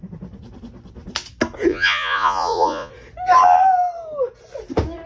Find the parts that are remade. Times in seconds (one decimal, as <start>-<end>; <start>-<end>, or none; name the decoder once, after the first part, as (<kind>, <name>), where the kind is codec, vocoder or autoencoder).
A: 1.7-2.9 (vocoder, Vocos)